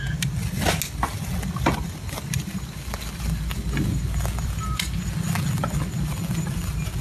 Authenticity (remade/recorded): recorded